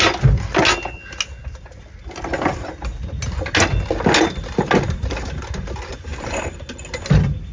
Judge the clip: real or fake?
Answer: real